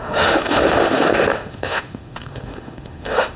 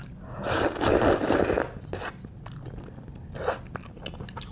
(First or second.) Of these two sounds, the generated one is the first